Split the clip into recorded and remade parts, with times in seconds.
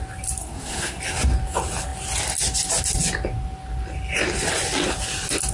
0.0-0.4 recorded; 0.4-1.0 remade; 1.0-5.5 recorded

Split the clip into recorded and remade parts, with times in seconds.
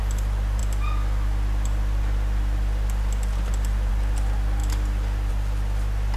0.0-6.2 recorded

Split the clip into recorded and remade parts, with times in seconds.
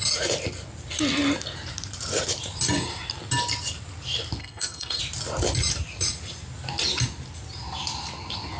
0.0-4.4 recorded; 4.4-5.0 remade; 5.0-8.6 recorded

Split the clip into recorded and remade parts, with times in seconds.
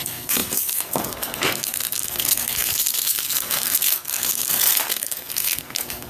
0.0-6.1 remade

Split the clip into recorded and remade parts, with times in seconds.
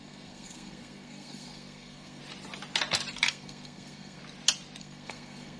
0.0-2.2 remade; 2.2-3.3 recorded; 3.3-4.2 remade; 4.2-4.8 recorded; 4.8-5.6 remade